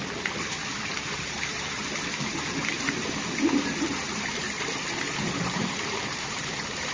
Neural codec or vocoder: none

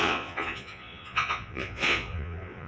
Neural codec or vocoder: vocoder, Vocos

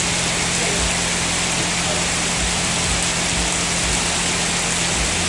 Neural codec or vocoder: none